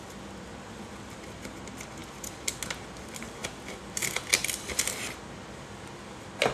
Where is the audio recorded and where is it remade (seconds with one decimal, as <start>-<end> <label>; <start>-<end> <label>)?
0.0-6.5 recorded